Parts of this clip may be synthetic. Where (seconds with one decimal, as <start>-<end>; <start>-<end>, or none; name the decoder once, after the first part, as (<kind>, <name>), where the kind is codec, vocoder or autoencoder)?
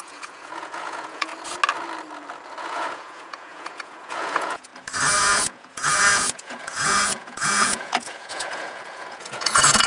0.0-1.3 (vocoder, Vocos); 2.6-4.7; 5.2-9.9